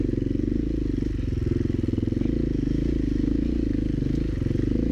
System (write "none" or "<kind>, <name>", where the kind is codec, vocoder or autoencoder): none